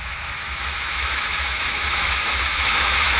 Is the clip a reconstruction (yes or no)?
yes